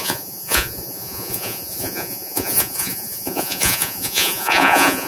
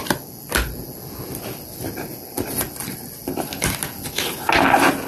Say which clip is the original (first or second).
second